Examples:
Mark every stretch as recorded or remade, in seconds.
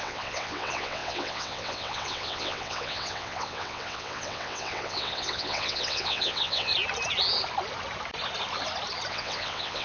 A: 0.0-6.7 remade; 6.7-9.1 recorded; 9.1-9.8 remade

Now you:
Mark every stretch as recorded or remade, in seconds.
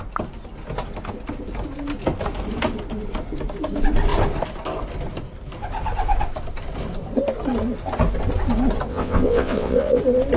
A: 0.0-8.9 recorded; 8.9-10.0 remade; 10.0-10.4 recorded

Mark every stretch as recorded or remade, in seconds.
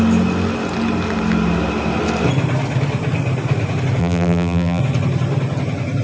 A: 0.0-4.0 recorded; 4.0-4.8 remade; 4.8-6.0 recorded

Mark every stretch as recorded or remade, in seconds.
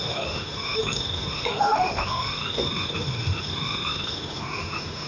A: 0.0-5.1 remade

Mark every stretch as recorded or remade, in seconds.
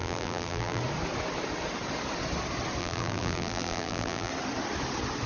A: 0.0-0.8 remade; 0.8-2.8 recorded; 2.8-4.3 remade; 4.3-5.3 recorded